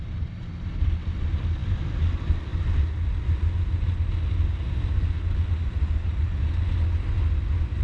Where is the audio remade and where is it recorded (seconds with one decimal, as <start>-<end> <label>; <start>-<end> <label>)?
0.0-7.8 recorded